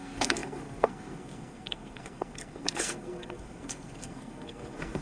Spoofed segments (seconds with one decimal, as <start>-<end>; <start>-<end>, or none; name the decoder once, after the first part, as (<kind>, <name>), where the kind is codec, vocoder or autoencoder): 0.0-5.0 (codec, SNAC)